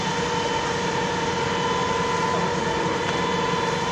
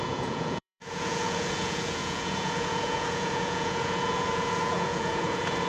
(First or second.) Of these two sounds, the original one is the first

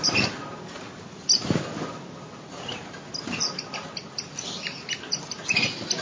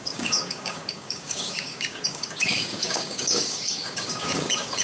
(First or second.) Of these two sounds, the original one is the first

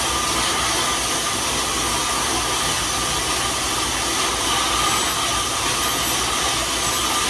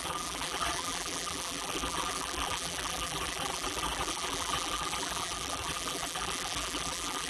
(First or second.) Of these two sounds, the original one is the first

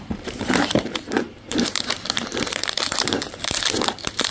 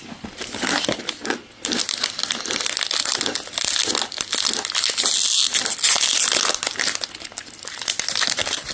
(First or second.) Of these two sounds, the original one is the second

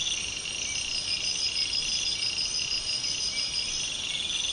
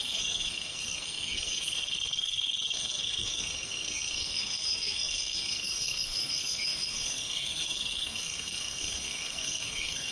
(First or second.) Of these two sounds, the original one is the first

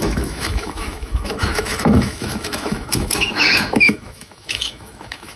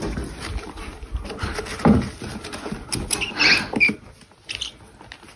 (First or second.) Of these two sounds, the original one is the second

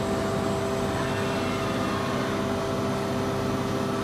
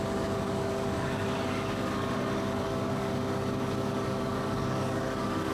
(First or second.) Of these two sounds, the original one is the first